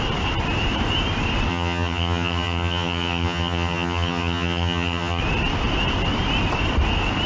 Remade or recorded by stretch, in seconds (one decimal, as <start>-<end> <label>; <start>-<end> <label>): 0.0-1.5 recorded; 1.5-5.2 remade; 5.2-7.3 recorded